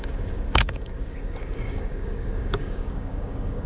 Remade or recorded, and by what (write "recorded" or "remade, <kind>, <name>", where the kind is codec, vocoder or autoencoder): remade, codec, DAC